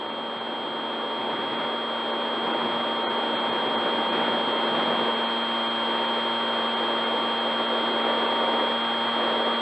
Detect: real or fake real